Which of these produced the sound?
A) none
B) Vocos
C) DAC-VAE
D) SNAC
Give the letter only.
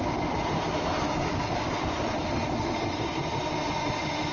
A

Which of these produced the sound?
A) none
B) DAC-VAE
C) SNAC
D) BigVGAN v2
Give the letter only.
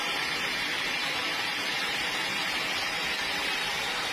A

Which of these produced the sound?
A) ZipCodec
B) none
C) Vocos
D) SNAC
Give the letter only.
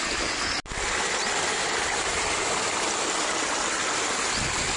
B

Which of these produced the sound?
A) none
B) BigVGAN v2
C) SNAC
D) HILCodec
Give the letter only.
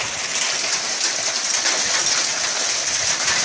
A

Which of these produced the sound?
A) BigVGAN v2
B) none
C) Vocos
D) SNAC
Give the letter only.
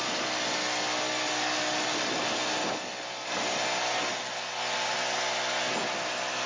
B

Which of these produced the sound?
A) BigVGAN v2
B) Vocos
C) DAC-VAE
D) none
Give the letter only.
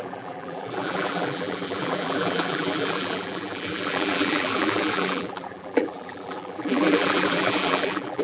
A